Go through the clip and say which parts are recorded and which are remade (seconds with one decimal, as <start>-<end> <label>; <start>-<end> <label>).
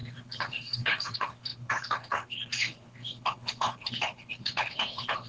0.0-5.3 remade